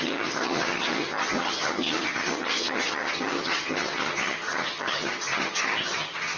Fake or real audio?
fake